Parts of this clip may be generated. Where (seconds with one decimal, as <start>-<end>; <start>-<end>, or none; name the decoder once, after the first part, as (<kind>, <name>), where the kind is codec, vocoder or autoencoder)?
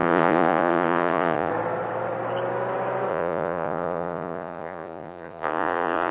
0.0-1.5 (vocoder, Vocos); 3.1-6.1